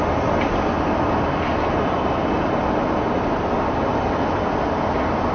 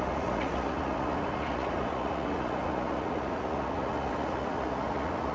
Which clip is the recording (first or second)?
first